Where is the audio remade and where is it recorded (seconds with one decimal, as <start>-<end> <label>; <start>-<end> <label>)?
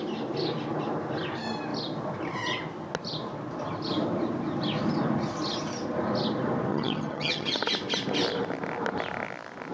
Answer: 0.0-6.7 recorded; 6.7-7.6 remade; 7.6-9.7 recorded